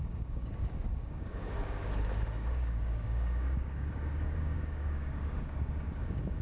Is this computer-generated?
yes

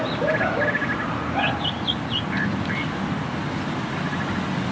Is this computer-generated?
no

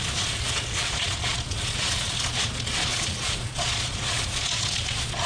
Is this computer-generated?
yes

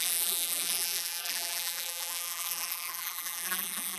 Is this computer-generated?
yes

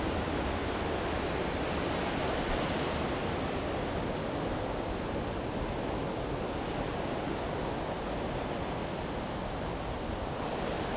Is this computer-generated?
no